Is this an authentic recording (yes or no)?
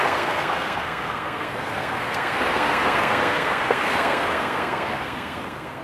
no